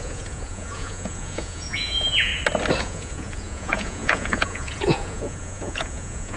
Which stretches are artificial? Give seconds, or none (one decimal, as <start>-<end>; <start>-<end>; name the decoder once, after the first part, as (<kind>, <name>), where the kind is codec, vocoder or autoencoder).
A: 0.0-2.3 (vocoder, Vocos); 2.8-6.4